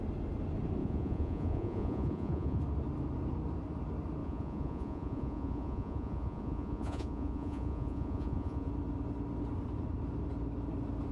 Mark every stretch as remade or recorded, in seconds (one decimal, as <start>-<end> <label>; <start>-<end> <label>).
0.0-0.8 recorded; 0.8-2.6 remade; 2.6-4.2 recorded; 4.2-8.7 remade; 8.7-11.1 recorded